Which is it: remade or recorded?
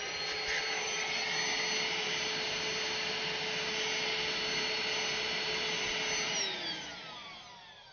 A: recorded